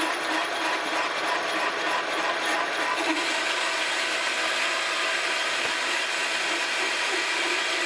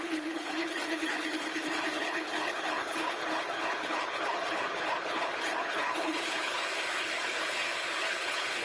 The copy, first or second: second